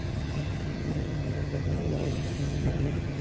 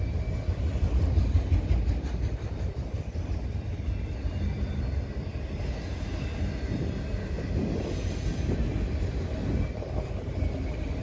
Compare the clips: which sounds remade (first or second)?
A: first